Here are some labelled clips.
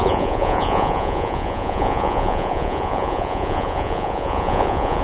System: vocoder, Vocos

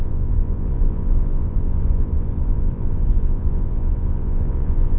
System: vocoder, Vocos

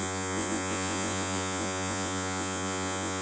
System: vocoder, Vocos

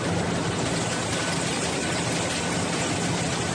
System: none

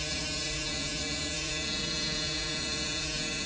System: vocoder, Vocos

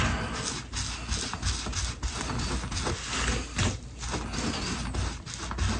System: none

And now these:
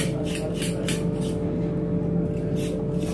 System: none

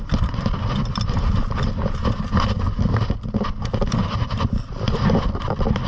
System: none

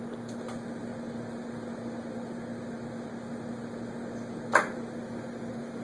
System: none